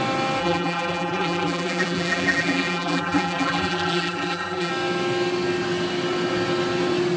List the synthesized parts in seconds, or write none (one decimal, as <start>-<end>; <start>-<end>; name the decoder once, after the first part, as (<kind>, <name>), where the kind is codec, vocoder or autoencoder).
0.4-4.7 (vocoder, BigVGAN v2)